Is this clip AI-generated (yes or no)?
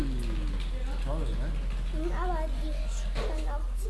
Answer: no